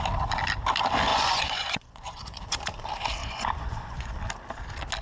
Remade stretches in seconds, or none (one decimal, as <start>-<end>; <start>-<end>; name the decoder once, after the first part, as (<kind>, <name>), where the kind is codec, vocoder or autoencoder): 1.1-2.6 (vocoder, Vocos); 3.2-4.1